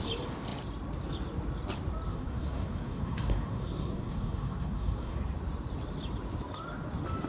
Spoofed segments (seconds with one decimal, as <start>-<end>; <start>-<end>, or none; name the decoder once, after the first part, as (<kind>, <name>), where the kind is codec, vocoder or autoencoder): 2.1-5.2 (codec, SNAC)